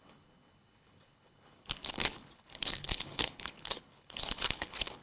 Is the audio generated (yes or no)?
yes